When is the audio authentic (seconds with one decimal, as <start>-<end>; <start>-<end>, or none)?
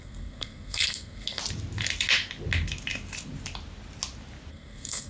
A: 1.4-4.5